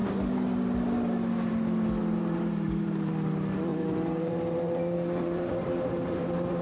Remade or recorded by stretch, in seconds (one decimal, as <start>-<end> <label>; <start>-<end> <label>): 0.0-2.0 recorded; 2.0-3.1 remade; 3.1-3.7 recorded; 3.7-6.6 remade